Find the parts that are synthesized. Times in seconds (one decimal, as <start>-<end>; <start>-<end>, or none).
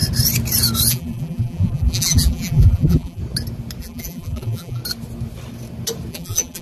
0.9-3.2; 3.8-4.8; 6.1-6.6